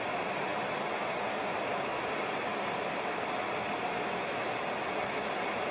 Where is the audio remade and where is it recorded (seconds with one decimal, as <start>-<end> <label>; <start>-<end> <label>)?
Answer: 0.0-5.7 recorded